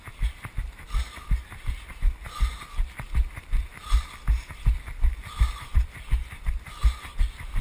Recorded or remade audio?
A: recorded